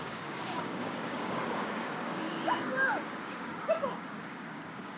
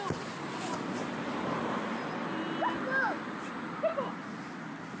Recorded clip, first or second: second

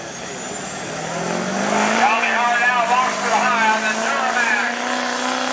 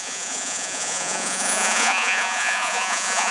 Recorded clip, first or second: first